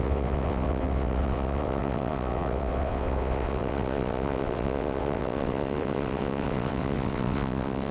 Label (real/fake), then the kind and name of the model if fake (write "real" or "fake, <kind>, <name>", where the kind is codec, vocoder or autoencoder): fake, vocoder, WaveNeXt